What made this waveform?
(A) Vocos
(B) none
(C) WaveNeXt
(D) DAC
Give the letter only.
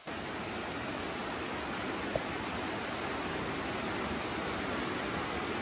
B